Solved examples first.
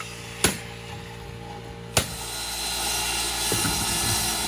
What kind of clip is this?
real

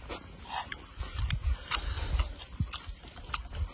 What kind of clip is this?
real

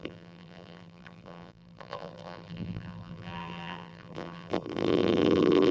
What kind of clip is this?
fake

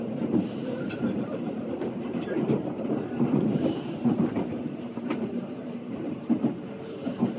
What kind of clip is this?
fake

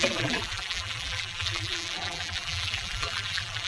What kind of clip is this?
fake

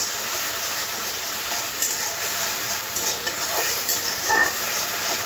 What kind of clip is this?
fake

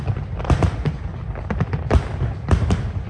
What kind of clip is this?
real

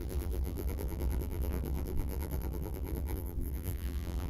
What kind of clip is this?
fake